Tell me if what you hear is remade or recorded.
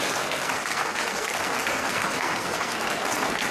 remade